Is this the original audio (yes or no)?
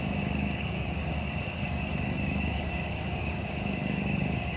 no